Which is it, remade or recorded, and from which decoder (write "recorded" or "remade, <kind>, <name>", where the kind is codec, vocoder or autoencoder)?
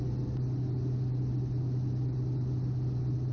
recorded